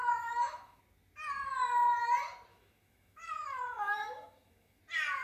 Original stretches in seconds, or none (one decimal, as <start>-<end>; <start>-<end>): 0.8-2.5; 4.8-5.2